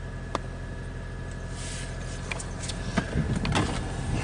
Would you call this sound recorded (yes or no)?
yes